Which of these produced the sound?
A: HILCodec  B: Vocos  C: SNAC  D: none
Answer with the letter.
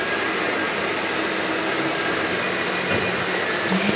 D